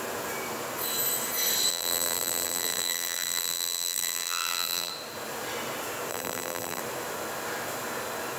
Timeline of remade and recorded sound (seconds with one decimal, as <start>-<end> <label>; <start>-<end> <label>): 0.0-1.7 recorded; 1.7-4.9 remade; 4.9-6.1 recorded; 6.1-6.8 remade; 6.8-8.4 recorded